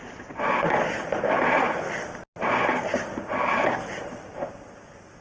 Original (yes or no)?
yes